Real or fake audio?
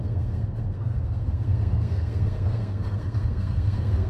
fake